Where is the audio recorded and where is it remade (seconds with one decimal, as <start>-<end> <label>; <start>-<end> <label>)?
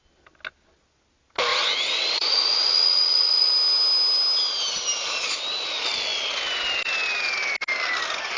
0.0-1.5 recorded; 1.5-3.5 remade; 3.5-8.4 recorded